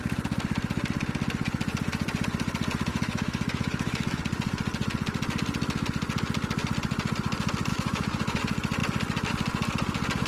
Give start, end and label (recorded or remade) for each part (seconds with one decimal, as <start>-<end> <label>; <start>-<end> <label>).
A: 0.0-2.9 recorded; 2.9-4.2 remade; 4.2-7.7 recorded; 7.7-8.4 remade; 8.4-10.3 recorded